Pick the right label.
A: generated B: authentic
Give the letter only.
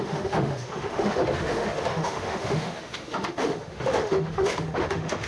A